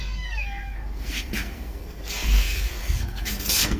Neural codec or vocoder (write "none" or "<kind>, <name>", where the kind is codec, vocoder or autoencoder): codec, SNAC